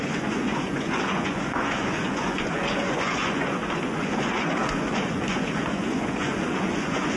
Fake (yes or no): yes